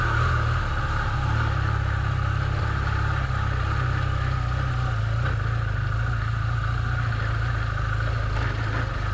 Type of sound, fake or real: real